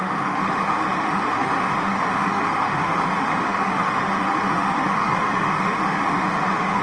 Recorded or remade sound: remade